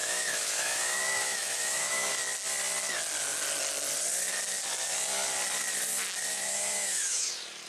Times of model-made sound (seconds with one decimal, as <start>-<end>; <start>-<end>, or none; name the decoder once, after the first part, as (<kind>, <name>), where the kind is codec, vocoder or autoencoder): 0.0-2.1 (autoencoder, DAC-VAE); 6.3-7.3